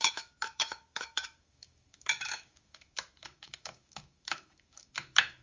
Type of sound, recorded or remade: remade